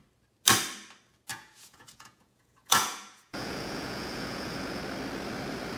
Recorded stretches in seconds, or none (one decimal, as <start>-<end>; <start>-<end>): 0.0-1.3; 4.8-5.8